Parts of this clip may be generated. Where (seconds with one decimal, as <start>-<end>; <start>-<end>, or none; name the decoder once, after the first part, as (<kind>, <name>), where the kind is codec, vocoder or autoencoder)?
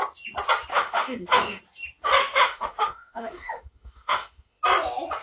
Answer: 0.7-1.6 (autoencoder, DAC-VAE); 2.2-4.6